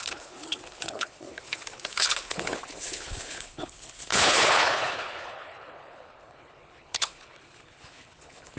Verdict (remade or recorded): remade